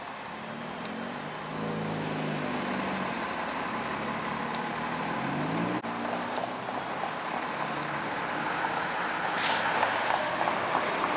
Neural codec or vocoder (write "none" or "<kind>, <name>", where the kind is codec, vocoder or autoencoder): none